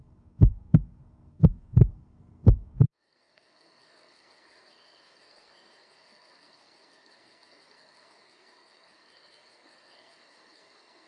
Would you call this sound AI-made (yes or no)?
yes